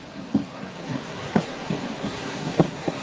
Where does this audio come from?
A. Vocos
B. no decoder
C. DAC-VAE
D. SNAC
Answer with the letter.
D